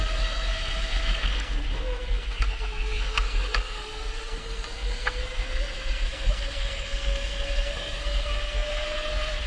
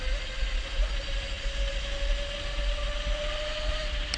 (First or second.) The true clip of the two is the second